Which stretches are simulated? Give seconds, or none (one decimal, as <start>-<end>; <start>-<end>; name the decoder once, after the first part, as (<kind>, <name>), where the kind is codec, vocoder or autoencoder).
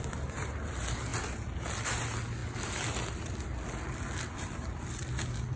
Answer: none